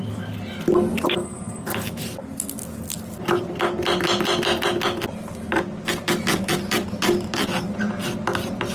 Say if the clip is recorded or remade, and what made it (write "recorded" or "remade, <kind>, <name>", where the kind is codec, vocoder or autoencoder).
recorded